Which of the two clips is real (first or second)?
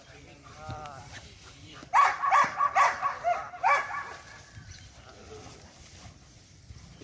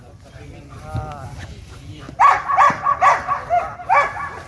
second